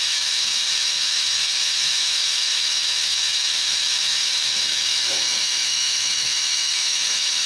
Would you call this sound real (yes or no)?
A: no